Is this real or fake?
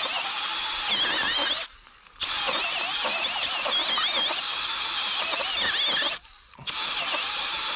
real